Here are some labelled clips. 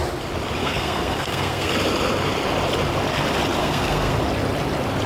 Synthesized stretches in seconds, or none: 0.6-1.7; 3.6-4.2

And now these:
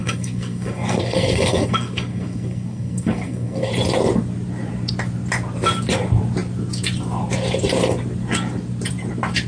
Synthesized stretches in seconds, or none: 0.0-3.7

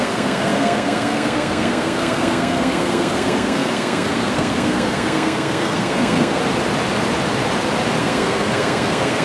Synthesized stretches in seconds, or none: 0.0-6.4; 8.0-9.2

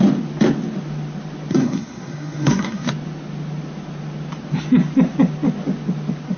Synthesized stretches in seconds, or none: 1.5-2.9

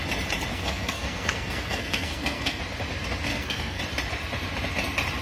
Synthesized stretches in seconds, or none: 0.5-2.6; 3.3-3.8

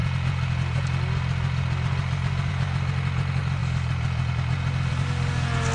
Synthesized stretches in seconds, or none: none

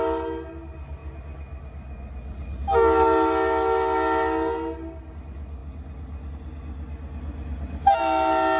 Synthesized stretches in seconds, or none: none

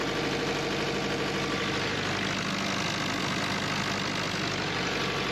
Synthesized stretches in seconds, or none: none